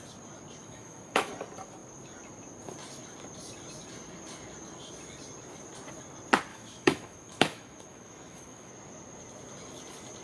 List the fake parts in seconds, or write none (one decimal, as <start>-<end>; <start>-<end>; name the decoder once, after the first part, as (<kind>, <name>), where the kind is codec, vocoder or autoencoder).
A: 0.6-1.3 (autoencoder, DAC-VAE); 6.5-8.7